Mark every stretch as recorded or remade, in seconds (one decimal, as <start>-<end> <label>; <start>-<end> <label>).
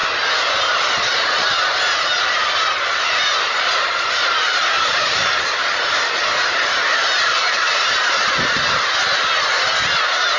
0.0-0.6 recorded; 0.6-10.4 remade